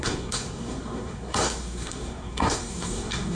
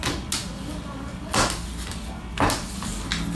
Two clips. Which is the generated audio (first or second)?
first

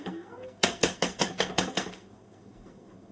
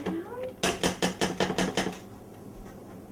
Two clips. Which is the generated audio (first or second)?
first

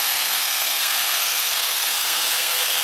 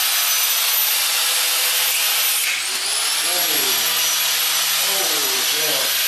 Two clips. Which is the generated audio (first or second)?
first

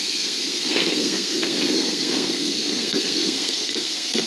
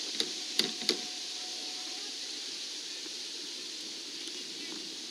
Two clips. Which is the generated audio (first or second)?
first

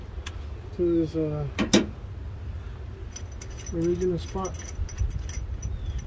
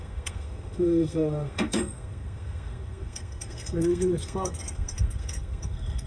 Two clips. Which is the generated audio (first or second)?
second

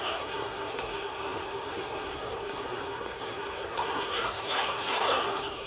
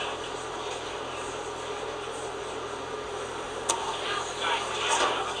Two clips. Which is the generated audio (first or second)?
first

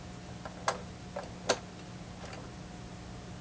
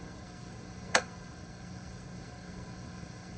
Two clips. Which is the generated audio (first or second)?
second